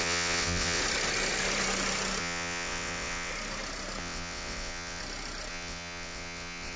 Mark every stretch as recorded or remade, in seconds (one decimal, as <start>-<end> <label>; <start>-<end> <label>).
0.0-0.8 remade; 0.8-2.2 recorded; 2.2-3.3 remade; 3.3-4.0 recorded; 4.0-5.0 remade; 5.0-5.5 recorded; 5.5-6.8 remade

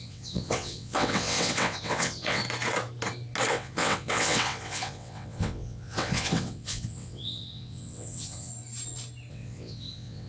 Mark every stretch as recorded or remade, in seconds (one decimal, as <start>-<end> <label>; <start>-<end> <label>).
0.0-2.4 remade; 2.4-3.5 recorded; 3.5-8.5 remade; 8.5-9.3 recorded; 9.3-10.3 remade

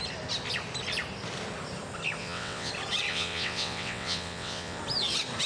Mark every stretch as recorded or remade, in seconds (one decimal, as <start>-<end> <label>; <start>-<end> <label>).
0.0-2.2 recorded; 2.2-2.7 remade; 2.7-3.1 recorded; 3.1-4.8 remade; 4.8-5.5 recorded

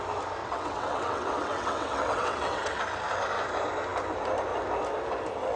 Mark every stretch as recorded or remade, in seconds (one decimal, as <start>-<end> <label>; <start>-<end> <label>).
0.0-0.4 recorded; 0.4-2.8 remade; 2.8-5.6 recorded

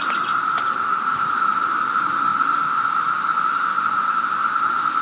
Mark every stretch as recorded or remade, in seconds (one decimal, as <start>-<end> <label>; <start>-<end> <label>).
0.0-5.0 recorded

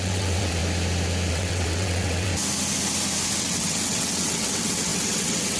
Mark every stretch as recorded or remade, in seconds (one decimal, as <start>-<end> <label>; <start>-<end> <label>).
0.0-0.6 remade; 0.6-1.3 recorded; 1.3-2.3 remade; 2.3-3.4 recorded; 3.4-5.6 remade

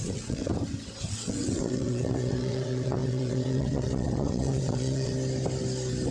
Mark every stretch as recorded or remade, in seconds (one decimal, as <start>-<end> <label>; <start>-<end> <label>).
0.0-0.5 remade; 0.5-1.1 recorded; 1.1-5.1 remade; 5.1-6.1 recorded